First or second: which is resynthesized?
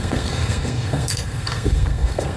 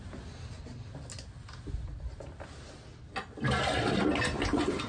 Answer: first